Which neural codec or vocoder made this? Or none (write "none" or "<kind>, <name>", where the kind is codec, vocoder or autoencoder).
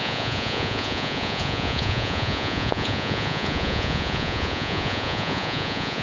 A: vocoder, Vocos